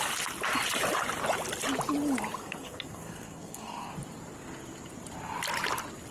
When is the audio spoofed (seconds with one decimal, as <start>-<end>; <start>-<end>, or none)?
2.4-3.9